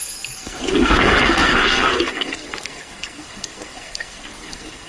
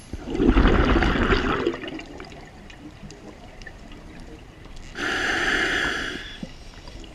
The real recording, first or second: second